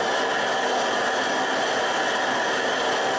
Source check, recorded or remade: recorded